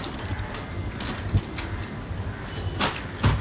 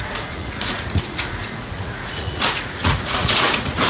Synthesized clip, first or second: second